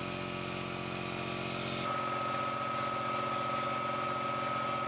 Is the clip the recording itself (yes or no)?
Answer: yes